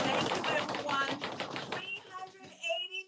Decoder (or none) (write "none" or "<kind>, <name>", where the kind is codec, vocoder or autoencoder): none